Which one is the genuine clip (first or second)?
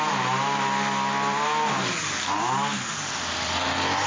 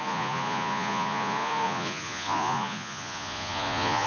first